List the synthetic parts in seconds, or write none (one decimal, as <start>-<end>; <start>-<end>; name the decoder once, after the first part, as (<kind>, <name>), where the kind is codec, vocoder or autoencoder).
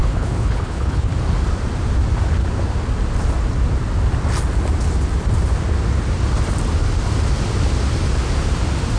0.0-1.1 (codec, HILCodec)